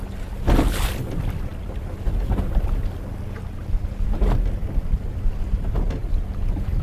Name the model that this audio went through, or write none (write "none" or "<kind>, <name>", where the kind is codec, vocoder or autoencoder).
none